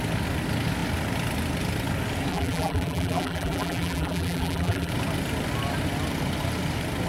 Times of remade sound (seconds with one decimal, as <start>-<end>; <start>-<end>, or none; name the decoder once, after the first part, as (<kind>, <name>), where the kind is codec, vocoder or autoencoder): 2.3-4.9 (vocoder, BigVGAN v2)